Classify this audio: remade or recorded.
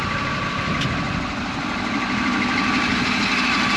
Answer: recorded